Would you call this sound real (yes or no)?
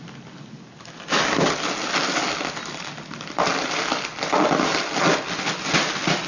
yes